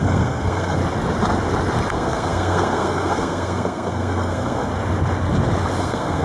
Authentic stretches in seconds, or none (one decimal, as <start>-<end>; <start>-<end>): 0.8-1.9; 4.7-5.8